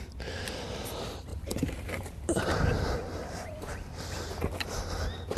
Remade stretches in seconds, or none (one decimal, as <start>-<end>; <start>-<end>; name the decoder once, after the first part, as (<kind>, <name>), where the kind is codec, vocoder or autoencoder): 1.3-4.5 (vocoder, BigVGAN v2)